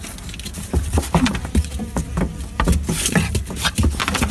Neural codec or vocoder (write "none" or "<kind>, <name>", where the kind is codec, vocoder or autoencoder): none